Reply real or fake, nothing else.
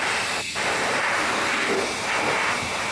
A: real